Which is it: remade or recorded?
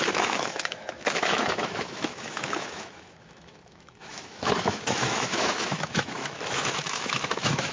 remade